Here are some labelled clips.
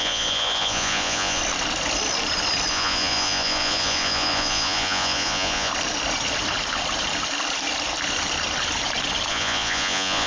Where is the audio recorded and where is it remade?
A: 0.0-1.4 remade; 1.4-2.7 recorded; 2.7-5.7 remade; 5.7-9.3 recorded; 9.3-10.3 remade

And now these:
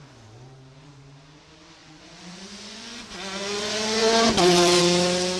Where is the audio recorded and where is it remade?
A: 0.0-1.8 recorded; 1.8-4.8 remade; 4.8-5.4 recorded

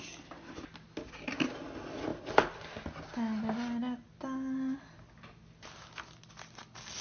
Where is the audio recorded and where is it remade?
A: 0.0-7.0 recorded

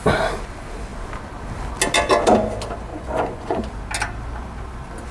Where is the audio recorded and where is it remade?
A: 0.0-2.9 recorded; 2.9-3.6 remade; 3.6-5.1 recorded

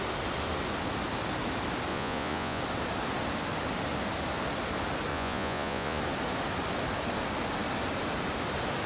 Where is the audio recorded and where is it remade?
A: 0.0-1.9 recorded; 1.9-2.6 remade; 2.6-5.1 recorded; 5.1-6.0 remade; 6.0-8.9 recorded